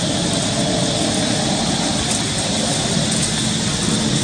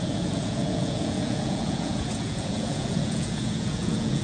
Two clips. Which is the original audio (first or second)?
first